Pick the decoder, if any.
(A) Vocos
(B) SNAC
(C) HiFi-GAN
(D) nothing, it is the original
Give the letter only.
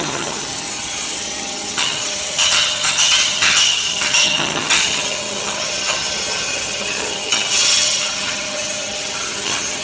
C